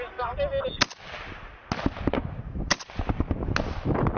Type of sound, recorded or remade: recorded